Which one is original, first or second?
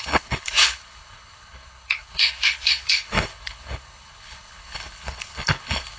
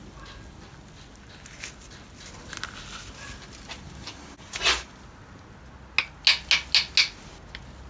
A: second